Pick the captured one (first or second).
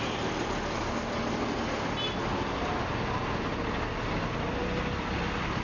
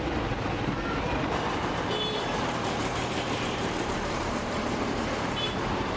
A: first